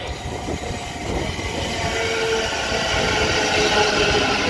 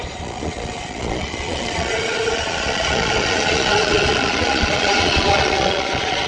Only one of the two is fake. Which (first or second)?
second